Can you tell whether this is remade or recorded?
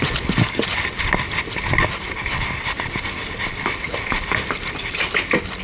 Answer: recorded